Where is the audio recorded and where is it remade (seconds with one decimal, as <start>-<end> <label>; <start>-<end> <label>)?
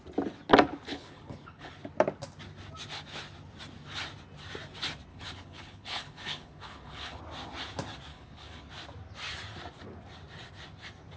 0.0-0.9 recorded; 0.9-1.7 remade; 1.7-5.1 recorded; 5.1-7.2 remade; 7.2-8.1 recorded; 8.1-8.7 remade; 8.7-11.2 recorded